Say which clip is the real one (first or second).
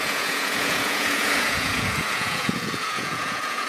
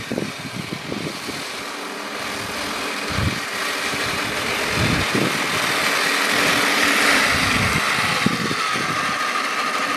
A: second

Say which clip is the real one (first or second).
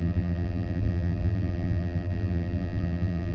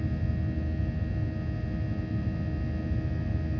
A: second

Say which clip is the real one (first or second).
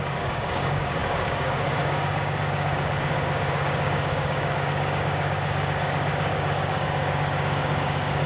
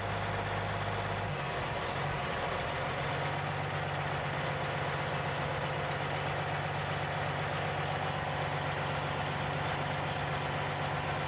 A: second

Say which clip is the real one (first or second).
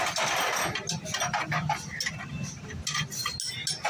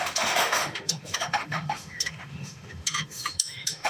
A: first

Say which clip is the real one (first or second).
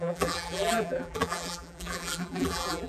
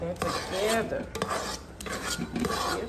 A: second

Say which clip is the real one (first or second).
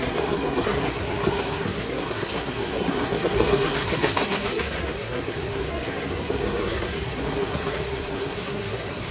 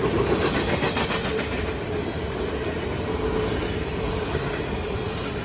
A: second